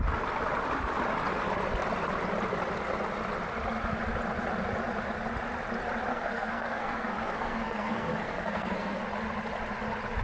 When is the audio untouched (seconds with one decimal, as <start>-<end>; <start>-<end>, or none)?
0.0-6.1; 9.0-10.2